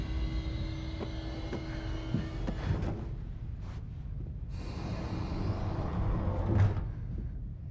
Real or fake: real